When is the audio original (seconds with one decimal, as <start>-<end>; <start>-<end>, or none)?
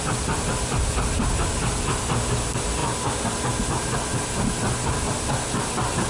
0.0-6.1